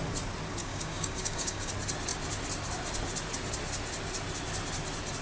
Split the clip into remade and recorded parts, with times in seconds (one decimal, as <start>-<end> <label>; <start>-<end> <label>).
0.0-0.6 recorded; 0.6-1.7 remade; 1.7-5.2 recorded